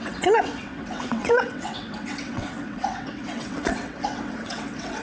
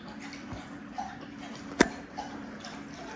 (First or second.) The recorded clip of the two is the second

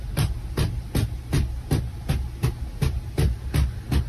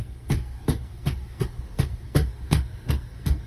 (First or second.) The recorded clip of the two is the first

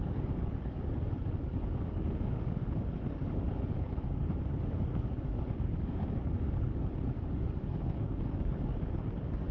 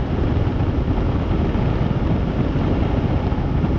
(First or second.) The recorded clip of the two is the second